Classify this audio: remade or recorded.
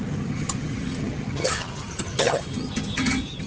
remade